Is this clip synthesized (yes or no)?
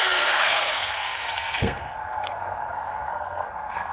yes